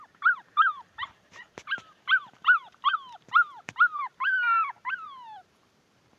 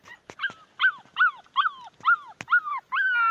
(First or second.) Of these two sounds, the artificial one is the first